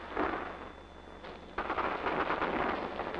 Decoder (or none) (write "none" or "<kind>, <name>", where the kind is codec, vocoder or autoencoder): none